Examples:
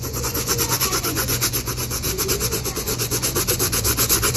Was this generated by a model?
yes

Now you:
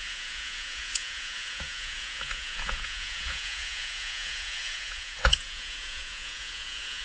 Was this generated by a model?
yes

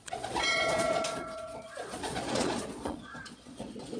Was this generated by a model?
yes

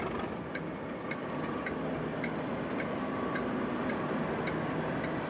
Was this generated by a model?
no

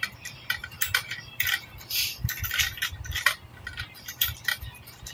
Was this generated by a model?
yes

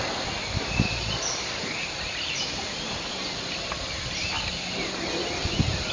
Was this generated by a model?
no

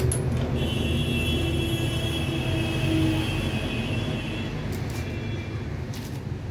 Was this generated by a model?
no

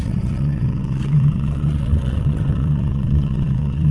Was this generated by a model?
yes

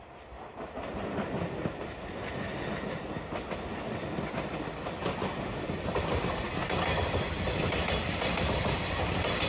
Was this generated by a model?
no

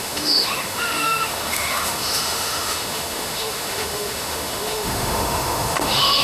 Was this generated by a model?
yes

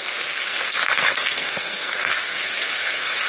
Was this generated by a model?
yes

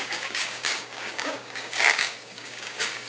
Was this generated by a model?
yes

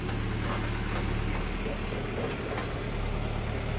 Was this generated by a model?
no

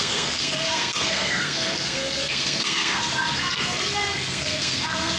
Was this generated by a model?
yes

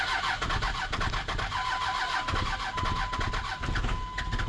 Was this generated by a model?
no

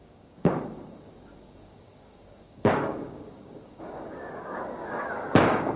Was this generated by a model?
yes